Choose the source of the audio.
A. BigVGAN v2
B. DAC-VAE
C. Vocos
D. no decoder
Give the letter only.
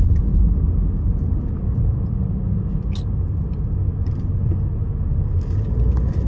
D